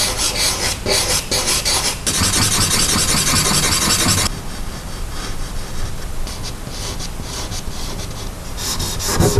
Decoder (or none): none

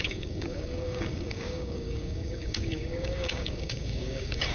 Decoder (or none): codec, DAC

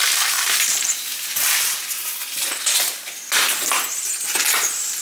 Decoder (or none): vocoder, BigVGAN v2